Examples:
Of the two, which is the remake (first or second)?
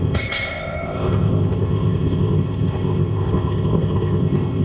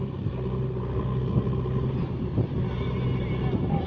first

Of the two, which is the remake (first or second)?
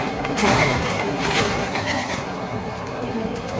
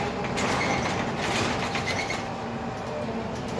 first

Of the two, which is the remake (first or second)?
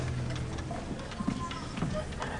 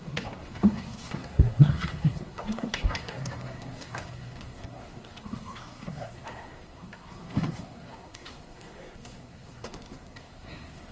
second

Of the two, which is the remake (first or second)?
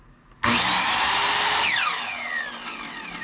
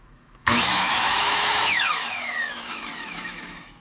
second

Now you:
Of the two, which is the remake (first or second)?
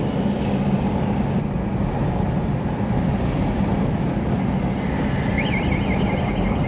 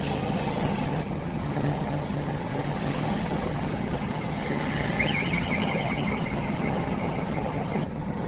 second